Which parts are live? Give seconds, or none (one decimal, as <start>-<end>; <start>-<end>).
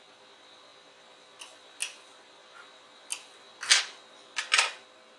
0.0-5.2